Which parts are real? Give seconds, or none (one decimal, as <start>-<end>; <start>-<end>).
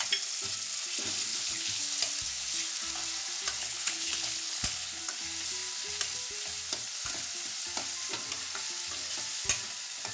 0.0-1.3; 1.8-3.6; 5.0-10.1